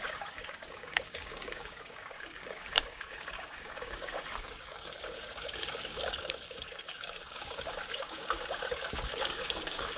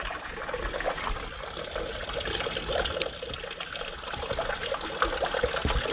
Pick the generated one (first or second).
first